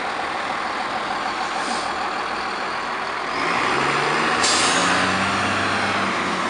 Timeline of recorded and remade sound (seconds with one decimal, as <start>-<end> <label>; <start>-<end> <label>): 0.0-6.5 recorded